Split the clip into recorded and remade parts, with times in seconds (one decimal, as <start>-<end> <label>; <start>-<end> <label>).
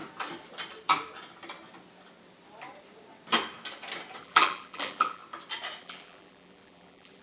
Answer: 0.0-4.2 recorded; 4.2-5.2 remade; 5.2-5.8 recorded; 5.8-7.2 remade